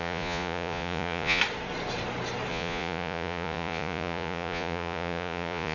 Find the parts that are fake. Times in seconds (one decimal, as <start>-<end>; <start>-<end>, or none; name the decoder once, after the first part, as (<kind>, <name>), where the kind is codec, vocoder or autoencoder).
0.0-1.4 (vocoder, Vocos); 2.5-5.7